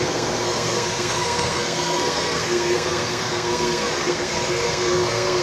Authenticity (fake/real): fake